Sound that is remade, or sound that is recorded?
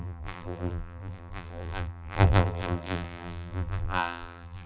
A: remade